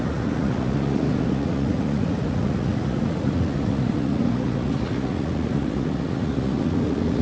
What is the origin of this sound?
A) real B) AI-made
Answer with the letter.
B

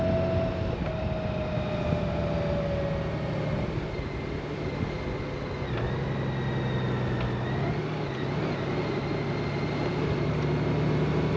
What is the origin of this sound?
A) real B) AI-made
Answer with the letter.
A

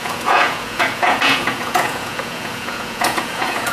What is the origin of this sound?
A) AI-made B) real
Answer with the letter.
A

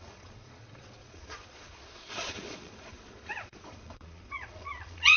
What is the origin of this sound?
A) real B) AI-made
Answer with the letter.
B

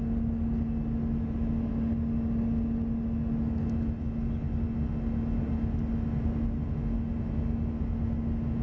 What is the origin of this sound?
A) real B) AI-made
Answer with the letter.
A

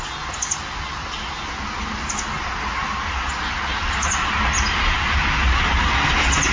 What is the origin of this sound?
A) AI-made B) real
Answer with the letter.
B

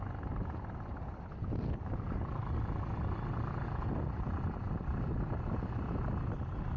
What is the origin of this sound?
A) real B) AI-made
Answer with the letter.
A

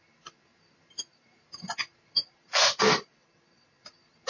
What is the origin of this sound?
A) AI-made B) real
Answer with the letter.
B